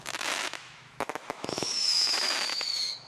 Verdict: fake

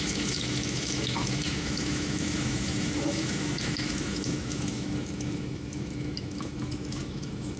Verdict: fake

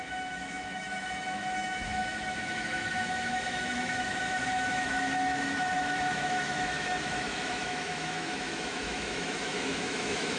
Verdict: fake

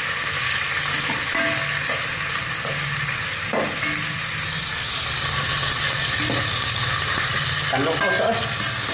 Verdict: real